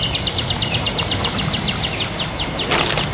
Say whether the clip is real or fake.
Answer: real